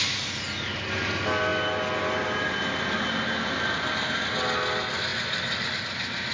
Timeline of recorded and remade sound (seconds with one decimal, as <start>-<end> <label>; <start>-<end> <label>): 0.0-6.3 recorded